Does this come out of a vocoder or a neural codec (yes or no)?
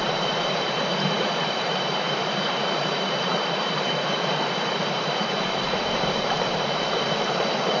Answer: yes